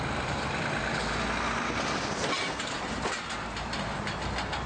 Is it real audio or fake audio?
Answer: real